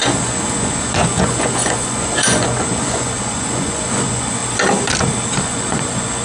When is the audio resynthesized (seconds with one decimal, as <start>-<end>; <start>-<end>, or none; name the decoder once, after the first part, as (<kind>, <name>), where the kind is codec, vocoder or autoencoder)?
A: 0.0-4.4 (vocoder, Vocos); 5.4-6.2